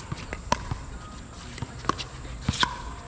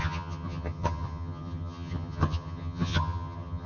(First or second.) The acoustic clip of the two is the first